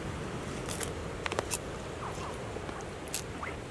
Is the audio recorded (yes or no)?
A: yes